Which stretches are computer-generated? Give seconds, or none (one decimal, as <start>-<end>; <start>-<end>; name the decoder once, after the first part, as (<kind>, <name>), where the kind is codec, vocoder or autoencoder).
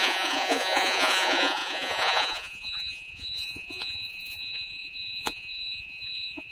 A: 0.0-6.5 (vocoder, Vocos)